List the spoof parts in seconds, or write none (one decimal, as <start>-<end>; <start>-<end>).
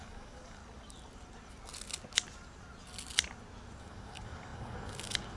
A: 0.0-0.6; 3.8-5.4